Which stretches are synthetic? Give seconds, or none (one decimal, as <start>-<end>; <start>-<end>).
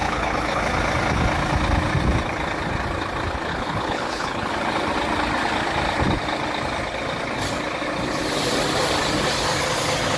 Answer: 0.0-0.6; 3.5-4.5